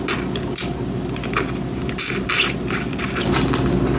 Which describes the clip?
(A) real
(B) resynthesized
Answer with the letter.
A